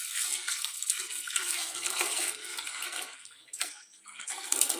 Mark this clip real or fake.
fake